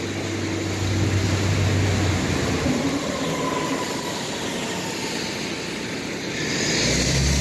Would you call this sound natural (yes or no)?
yes